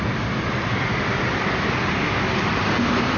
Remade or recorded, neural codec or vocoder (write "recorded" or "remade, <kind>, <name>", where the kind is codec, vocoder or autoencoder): recorded